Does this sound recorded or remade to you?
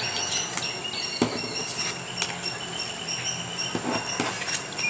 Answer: recorded